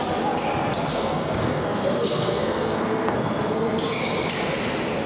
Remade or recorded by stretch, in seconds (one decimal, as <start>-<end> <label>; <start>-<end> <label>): 0.0-0.9 recorded; 0.9-4.0 remade; 4.0-5.1 recorded